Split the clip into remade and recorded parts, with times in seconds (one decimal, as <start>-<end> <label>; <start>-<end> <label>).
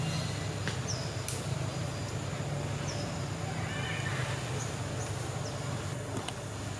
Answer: 0.0-6.8 recorded